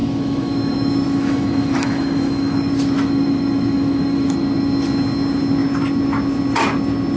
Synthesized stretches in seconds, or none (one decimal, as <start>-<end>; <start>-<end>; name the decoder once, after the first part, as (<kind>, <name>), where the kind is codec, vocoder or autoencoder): 0.0-4.3 (autoencoder, DAC-VAE)